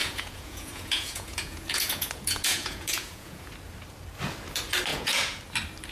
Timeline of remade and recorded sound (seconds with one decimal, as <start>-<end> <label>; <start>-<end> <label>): 0.0-3.5 remade; 3.5-4.9 recorded; 4.9-5.4 remade; 5.4-5.9 recorded